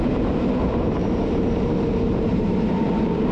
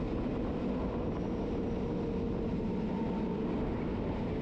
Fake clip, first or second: first